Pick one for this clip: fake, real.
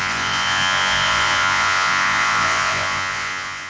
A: fake